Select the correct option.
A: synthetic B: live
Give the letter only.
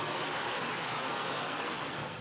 A